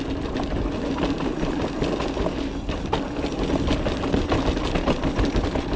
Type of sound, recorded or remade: recorded